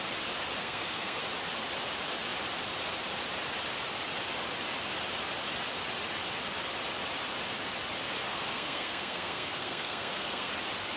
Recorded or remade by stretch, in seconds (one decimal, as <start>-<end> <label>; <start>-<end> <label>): 0.0-0.6 recorded; 0.6-1.2 remade; 1.2-8.3 recorded; 8.3-10.5 remade; 10.5-11.0 recorded